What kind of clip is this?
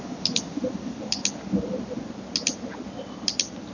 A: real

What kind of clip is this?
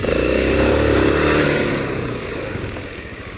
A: fake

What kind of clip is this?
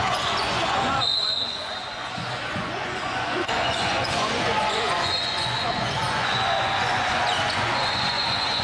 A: fake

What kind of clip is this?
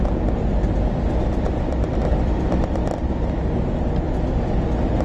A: real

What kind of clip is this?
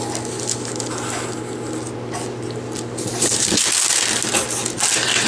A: real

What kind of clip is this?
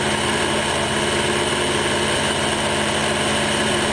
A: real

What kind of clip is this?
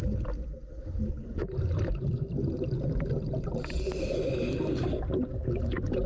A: real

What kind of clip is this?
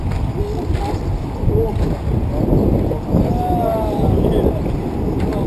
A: real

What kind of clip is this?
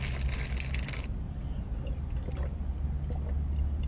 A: real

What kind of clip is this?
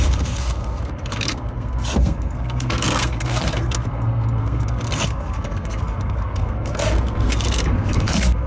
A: fake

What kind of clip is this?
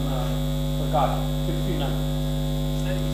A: real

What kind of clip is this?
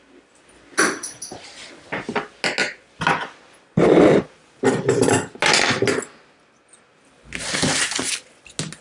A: real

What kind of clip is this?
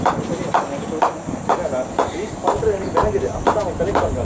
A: real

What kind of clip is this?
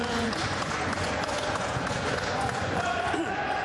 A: fake